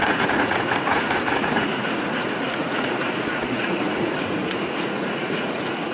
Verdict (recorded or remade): remade